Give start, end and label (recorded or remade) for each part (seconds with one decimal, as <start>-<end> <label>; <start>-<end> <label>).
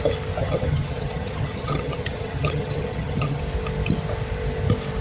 0.0-0.4 recorded; 0.4-3.4 remade; 3.4-5.0 recorded